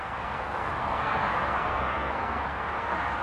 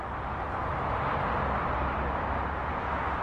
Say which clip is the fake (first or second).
first